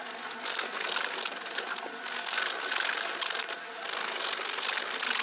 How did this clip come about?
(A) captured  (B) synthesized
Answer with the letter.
A